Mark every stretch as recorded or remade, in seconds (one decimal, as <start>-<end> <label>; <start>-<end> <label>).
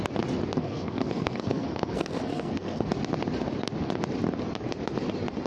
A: 0.0-0.6 recorded; 0.6-2.9 remade; 2.9-5.5 recorded